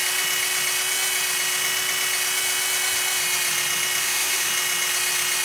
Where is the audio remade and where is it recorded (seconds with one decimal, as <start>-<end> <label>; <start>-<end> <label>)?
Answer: 0.0-4.0 recorded; 4.0-4.5 remade; 4.5-5.4 recorded